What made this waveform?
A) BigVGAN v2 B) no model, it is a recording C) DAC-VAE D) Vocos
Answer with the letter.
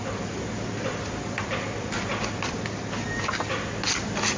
B